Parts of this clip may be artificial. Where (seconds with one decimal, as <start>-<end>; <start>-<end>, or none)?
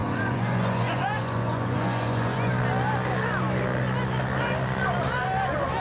0.0-2.5